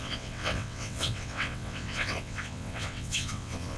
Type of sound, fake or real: fake